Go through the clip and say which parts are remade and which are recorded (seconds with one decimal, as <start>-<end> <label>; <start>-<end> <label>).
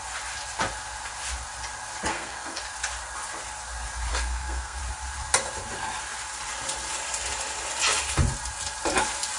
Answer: 0.0-2.1 recorded; 2.1-2.6 remade; 2.6-4.1 recorded; 4.1-4.8 remade; 4.8-9.4 recorded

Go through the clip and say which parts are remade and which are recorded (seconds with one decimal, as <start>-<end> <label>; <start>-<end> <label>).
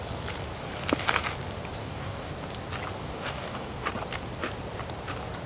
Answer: 0.0-1.8 recorded; 1.8-2.3 remade; 2.3-3.0 recorded; 3.0-3.9 remade; 3.9-5.5 recorded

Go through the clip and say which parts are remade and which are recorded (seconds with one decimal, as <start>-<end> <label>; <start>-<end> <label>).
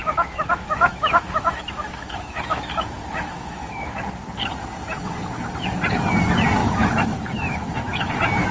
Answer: 0.0-4.0 remade; 4.0-6.6 recorded; 6.6-8.1 remade; 8.1-8.5 recorded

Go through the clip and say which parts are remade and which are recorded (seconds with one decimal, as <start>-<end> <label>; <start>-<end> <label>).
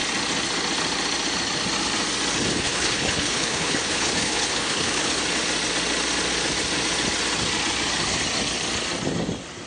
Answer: 0.0-2.5 recorded; 2.5-5.2 remade; 5.2-9.7 recorded